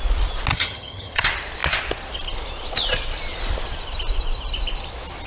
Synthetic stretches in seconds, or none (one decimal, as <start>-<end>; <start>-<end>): 0.5-1.2